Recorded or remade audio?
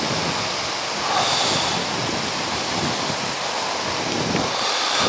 recorded